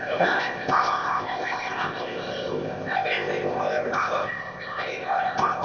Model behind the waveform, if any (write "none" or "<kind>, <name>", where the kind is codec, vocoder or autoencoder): codec, ZipCodec